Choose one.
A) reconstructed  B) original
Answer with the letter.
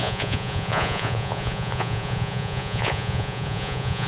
A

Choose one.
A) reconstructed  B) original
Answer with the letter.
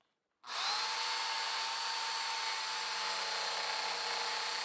B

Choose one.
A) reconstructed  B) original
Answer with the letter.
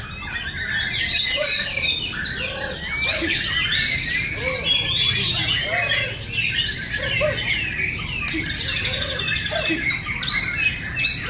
B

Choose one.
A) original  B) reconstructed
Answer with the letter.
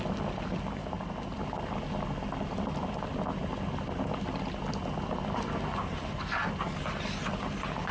A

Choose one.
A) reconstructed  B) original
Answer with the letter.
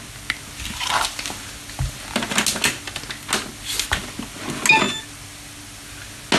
B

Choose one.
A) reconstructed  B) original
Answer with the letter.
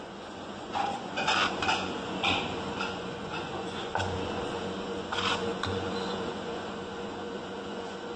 A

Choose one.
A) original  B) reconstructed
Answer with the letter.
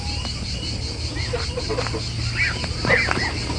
A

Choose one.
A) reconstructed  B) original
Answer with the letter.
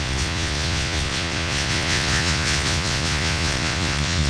A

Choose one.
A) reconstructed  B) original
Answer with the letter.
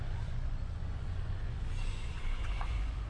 A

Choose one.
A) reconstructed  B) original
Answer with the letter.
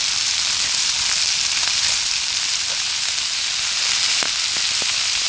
B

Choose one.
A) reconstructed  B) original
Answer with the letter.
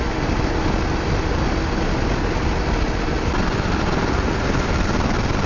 B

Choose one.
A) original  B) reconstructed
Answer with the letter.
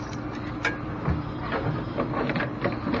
A